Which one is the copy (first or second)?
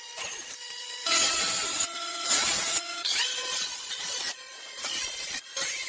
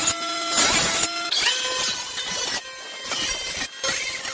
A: first